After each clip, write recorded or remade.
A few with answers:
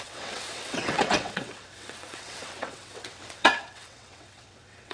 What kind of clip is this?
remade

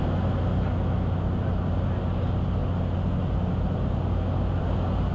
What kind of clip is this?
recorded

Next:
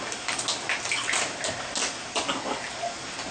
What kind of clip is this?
recorded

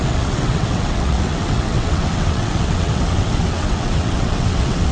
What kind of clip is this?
remade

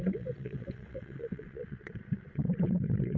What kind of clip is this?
remade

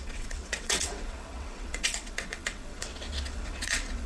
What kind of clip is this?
remade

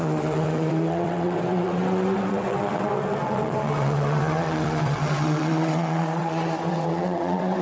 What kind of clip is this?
remade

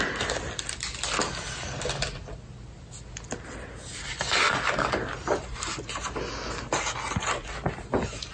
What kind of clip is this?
recorded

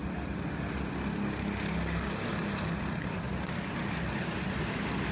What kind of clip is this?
recorded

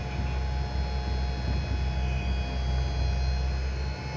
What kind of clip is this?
recorded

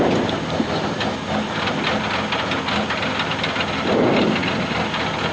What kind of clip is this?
recorded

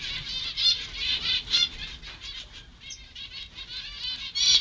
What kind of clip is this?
recorded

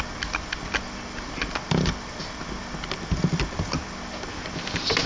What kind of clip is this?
recorded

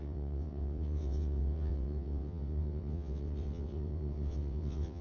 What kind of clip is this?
remade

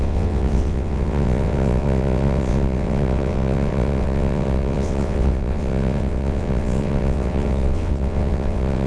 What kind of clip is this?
remade